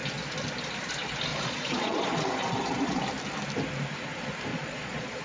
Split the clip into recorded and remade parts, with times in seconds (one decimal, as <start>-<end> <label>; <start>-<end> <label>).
0.0-1.3 recorded; 1.3-3.0 remade; 3.0-4.5 recorded; 4.5-5.2 remade

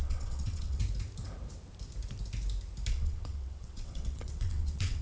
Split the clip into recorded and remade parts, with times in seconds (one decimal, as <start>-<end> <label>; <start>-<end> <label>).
0.0-0.8 remade; 0.8-2.9 recorded; 2.9-5.0 remade

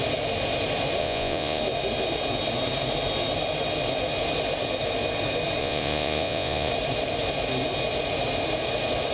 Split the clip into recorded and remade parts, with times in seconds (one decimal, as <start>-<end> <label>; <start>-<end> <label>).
0.0-1.0 recorded; 1.0-1.6 remade; 1.6-5.6 recorded; 5.6-6.7 remade; 6.7-9.1 recorded

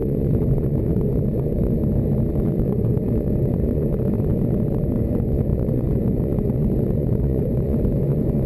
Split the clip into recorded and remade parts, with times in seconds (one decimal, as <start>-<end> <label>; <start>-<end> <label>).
0.0-1.8 remade; 1.8-2.3 recorded; 2.3-8.5 remade

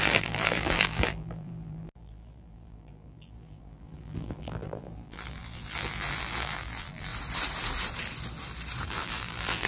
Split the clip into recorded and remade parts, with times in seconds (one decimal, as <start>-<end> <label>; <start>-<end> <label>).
0.0-7.1 remade; 7.1-8.9 recorded; 8.9-9.7 remade

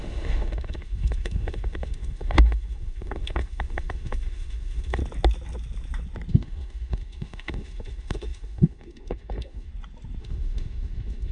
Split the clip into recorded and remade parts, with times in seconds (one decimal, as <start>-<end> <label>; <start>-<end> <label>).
0.0-5.0 remade; 5.0-6.3 recorded; 6.3-9.7 remade; 9.7-10.2 recorded; 10.2-11.3 remade

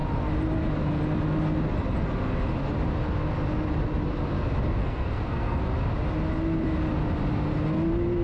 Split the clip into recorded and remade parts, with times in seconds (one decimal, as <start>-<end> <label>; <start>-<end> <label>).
0.0-4.8 recorded; 4.8-5.6 remade; 5.6-8.2 recorded

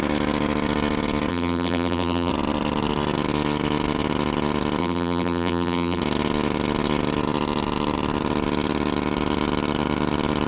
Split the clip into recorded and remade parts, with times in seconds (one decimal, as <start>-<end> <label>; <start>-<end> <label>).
0.0-1.3 recorded; 1.3-2.3 remade; 2.3-4.8 recorded; 4.8-6.0 remade; 6.0-10.5 recorded